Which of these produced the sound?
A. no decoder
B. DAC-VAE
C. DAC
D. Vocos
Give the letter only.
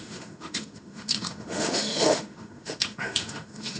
B